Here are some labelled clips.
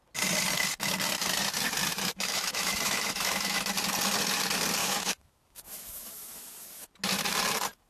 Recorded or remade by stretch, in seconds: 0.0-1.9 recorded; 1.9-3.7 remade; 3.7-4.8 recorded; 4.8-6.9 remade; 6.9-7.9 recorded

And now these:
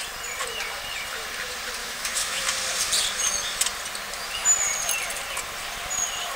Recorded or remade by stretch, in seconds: 0.0-1.8 recorded; 1.8-2.4 remade; 2.4-6.4 recorded

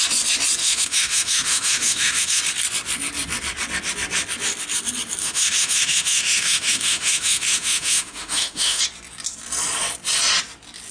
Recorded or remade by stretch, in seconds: 0.0-0.6 recorded; 0.6-2.4 remade; 2.4-5.2 recorded; 5.2-8.8 remade; 8.8-10.9 recorded

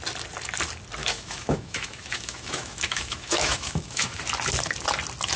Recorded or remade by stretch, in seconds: 0.0-1.0 recorded; 1.0-4.2 remade; 4.2-5.4 recorded

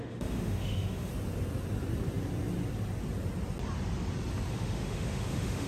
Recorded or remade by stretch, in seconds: 0.0-1.1 remade; 1.1-4.5 recorded; 4.5-5.7 remade

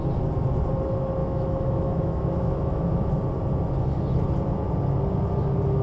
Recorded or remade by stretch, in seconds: 0.0-1.2 recorded; 1.2-3.1 remade; 3.1-5.8 recorded

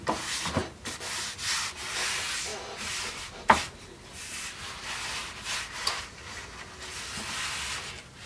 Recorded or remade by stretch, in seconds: 0.0-8.3 recorded

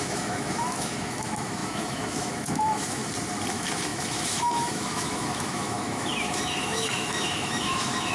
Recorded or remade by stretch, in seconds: 0.0-3.0 remade; 3.0-3.5 recorded; 3.5-8.1 remade